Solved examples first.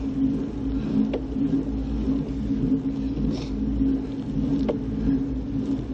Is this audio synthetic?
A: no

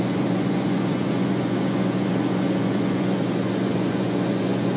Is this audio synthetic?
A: yes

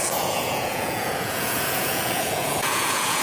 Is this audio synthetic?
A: yes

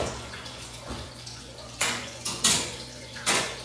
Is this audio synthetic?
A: yes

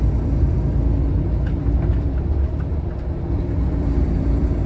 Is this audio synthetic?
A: yes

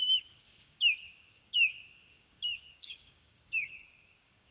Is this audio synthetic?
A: yes